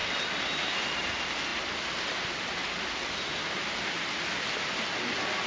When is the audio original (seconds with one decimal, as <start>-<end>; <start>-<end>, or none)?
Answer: 0.0-5.5